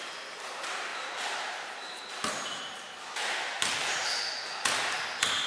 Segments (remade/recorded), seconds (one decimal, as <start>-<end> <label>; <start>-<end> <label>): 0.0-0.9 recorded; 0.9-4.2 remade; 4.2-5.5 recorded